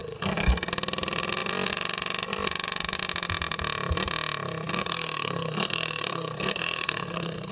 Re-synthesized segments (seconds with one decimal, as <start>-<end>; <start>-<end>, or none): 0.0-0.7; 4.7-7.5

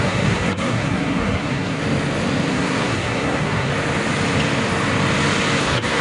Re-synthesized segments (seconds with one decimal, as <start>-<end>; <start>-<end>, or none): 0.0-1.8; 2.5-3.7; 5.6-6.0

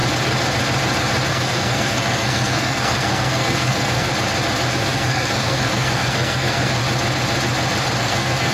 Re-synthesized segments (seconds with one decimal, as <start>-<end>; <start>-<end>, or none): 1.3-4.1; 4.7-6.8; 8.0-8.5

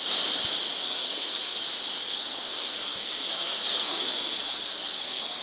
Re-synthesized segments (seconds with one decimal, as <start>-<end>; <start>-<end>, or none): 0.8-1.6; 2.1-5.4

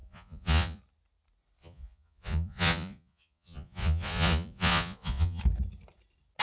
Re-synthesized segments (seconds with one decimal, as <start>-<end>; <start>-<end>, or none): 0.0-0.8; 1.6-5.4

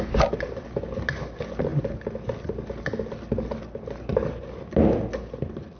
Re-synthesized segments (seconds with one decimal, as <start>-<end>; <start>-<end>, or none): none

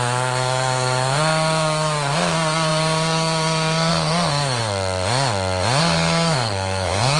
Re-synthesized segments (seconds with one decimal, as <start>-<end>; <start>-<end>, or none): 0.0-4.6; 5.8-7.2

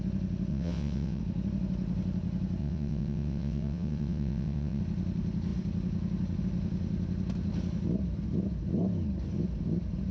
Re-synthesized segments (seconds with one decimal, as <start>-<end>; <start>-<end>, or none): 0.5-1.2; 2.6-4.8